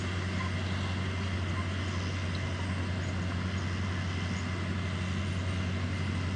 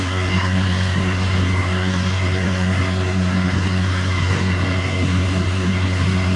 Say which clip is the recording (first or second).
first